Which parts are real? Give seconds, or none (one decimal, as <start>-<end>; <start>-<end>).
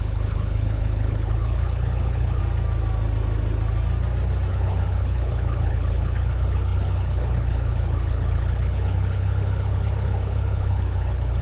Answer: 2.4-4.5